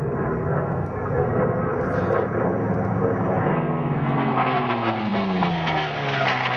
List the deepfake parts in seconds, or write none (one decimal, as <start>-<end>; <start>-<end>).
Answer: 0.0-1.7; 3.4-6.6